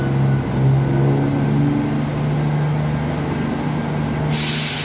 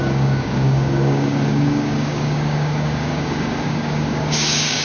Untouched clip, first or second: first